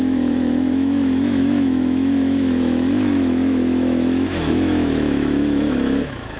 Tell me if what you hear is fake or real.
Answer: fake